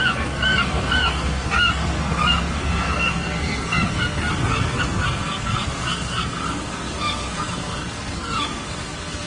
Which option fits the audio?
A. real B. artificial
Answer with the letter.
B